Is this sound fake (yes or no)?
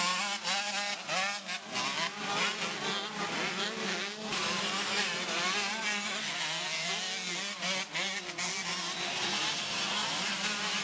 no